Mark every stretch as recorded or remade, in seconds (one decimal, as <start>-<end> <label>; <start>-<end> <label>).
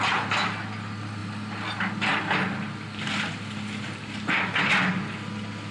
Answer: 0.0-5.7 recorded